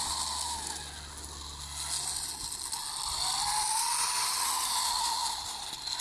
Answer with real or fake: real